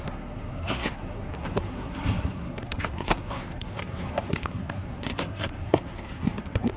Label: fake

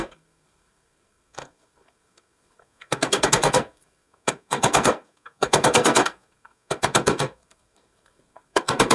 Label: fake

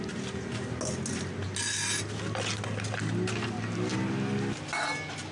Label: real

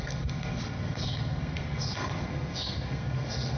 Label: fake